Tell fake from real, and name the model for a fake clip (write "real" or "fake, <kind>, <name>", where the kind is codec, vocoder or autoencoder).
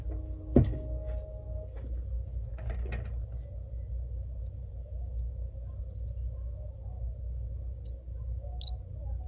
real